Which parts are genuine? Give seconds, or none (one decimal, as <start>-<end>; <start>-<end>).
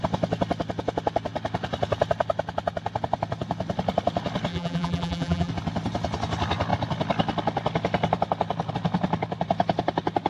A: 0.0-4.5; 5.5-10.3